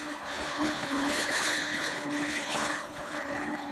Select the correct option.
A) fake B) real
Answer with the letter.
A